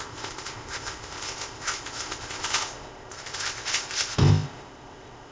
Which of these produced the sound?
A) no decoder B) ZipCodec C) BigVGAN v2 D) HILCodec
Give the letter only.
B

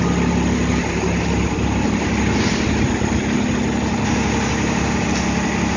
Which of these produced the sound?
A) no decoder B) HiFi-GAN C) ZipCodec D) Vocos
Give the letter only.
A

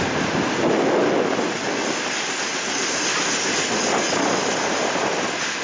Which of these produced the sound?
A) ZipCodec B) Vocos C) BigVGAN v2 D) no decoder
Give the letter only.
D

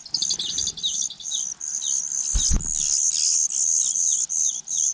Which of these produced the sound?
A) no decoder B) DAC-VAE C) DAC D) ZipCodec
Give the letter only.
A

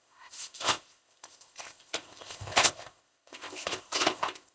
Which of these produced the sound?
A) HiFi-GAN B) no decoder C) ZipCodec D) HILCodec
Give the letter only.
C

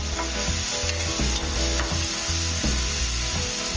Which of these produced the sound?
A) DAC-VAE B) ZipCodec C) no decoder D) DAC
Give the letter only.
C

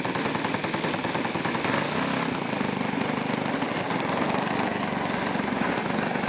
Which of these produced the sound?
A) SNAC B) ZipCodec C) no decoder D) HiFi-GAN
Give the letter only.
C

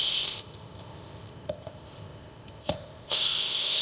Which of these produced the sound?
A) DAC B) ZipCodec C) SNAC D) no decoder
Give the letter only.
B